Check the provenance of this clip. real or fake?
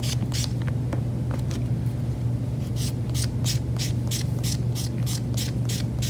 real